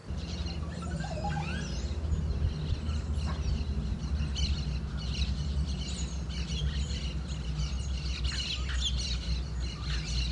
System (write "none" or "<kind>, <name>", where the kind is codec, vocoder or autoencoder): none